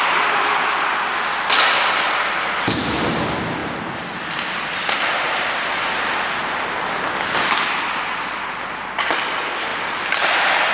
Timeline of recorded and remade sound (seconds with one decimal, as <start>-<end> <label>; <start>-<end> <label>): 0.0-3.6 recorded; 3.6-4.3 remade; 4.3-9.7 recorded; 9.7-10.7 remade